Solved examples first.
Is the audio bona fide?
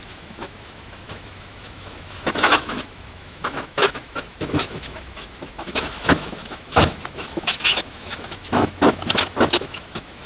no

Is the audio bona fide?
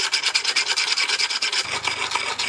yes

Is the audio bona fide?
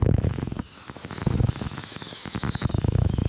no